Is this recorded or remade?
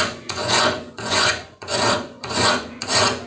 remade